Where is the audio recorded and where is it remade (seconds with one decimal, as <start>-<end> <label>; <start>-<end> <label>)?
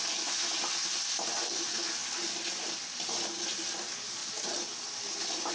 0.0-5.5 recorded